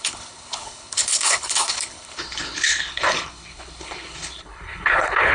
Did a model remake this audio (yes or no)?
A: yes